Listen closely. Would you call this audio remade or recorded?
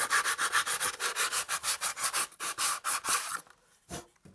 recorded